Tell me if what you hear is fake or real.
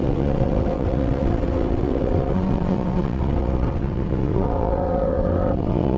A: fake